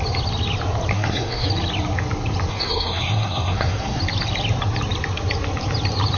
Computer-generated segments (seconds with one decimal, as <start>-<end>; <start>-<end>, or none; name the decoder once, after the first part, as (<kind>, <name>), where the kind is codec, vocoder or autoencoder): 0.9-1.5 (codec, SNAC); 2.5-4.0